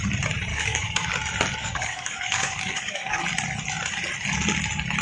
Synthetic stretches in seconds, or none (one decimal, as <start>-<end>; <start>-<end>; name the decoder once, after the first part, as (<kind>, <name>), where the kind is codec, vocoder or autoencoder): 0.5-1.1 (codec, DAC); 1.6-3.2